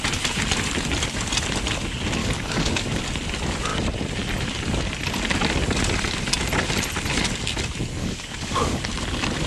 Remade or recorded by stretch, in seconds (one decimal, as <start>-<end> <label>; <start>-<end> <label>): 0.0-2.2 recorded; 2.2-3.0 remade; 3.0-8.0 recorded; 8.0-8.8 remade; 8.8-9.5 recorded

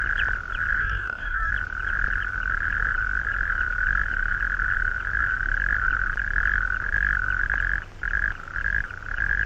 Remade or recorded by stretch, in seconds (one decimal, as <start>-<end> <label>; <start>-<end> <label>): 0.0-0.8 recorded; 0.8-1.5 remade; 1.5-9.5 recorded

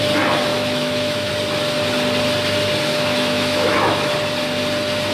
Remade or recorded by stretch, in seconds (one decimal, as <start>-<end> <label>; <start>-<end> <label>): 0.0-0.5 recorded; 0.5-1.3 remade; 1.3-2.9 recorded; 2.9-4.1 remade; 4.1-5.1 recorded